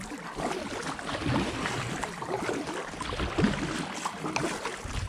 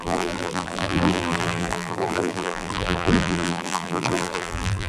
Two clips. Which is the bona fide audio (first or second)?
first